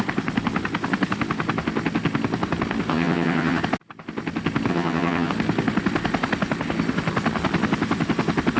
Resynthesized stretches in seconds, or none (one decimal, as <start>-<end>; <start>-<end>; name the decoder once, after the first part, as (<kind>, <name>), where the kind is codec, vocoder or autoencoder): 2.9-3.6 (vocoder, HiFi-GAN); 4.7-5.3